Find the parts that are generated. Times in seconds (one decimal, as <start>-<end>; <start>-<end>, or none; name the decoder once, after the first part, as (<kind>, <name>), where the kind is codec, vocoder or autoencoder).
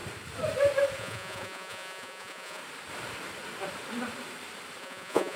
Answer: 1.0-2.6 (vocoder, Vocos); 4.8-5.4